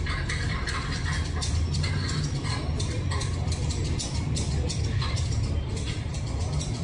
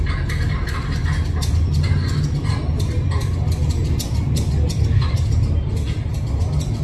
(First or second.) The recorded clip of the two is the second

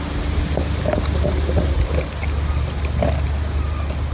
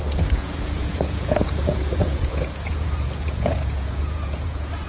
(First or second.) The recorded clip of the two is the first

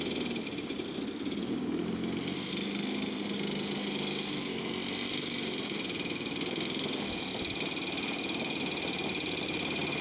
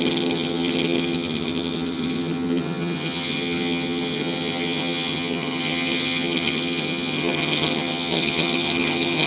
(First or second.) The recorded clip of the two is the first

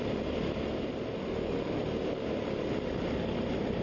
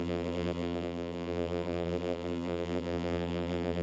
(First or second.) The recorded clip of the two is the first